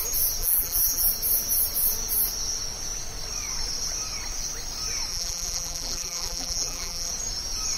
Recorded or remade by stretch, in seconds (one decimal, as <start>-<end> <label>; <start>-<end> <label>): 0.0-0.4 recorded; 0.4-1.1 remade; 1.1-5.1 recorded; 5.1-7.1 remade; 7.1-7.8 recorded